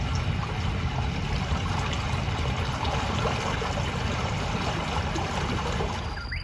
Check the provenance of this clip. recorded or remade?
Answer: recorded